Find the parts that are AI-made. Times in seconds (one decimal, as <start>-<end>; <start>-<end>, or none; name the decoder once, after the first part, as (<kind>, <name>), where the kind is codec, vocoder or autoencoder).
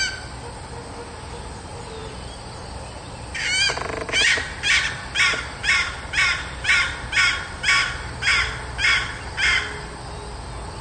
none